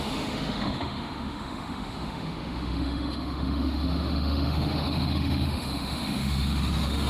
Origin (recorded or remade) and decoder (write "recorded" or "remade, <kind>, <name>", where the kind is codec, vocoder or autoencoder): remade, autoencoder, DAC-VAE